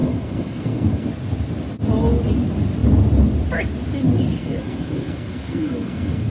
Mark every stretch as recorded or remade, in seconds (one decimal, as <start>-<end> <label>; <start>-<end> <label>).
0.0-1.1 remade; 1.1-4.4 recorded; 4.4-6.3 remade